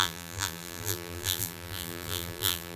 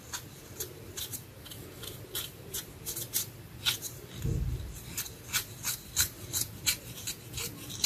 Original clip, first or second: second